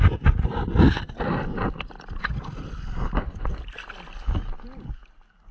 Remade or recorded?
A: recorded